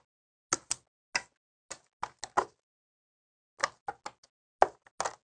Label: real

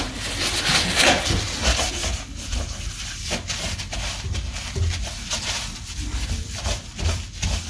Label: fake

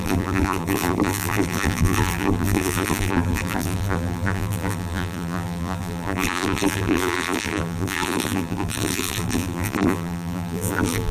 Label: fake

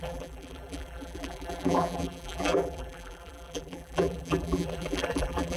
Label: fake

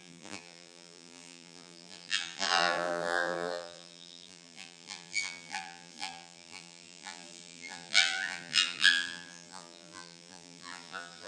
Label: fake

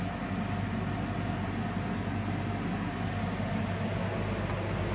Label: real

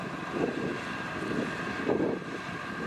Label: real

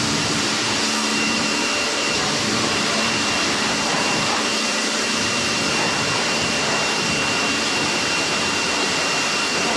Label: fake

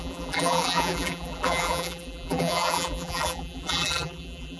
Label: fake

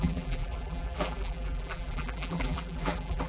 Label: fake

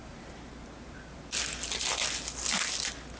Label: real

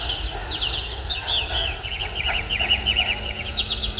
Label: real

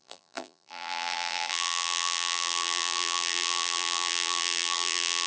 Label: fake